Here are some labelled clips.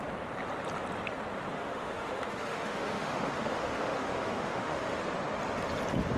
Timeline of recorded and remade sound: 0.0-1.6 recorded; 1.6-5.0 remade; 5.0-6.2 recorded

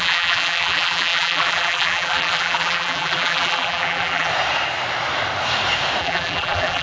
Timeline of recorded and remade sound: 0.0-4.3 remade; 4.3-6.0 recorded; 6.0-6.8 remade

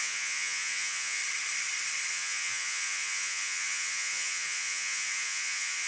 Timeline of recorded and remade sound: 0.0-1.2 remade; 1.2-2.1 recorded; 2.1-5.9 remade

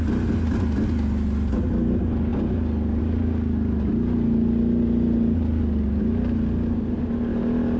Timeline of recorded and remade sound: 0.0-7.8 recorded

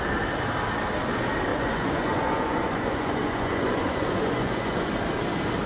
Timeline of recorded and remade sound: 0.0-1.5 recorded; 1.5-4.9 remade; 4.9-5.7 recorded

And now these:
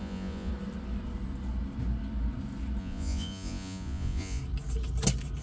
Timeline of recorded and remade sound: 0.0-0.5 remade; 0.5-2.8 recorded; 2.8-4.4 remade; 4.4-5.4 recorded

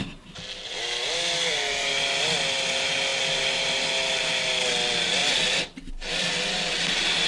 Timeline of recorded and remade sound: 0.0-7.3 recorded

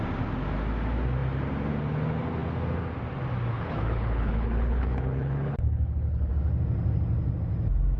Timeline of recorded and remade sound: 0.0-3.5 recorded; 3.5-6.3 remade; 6.3-8.0 recorded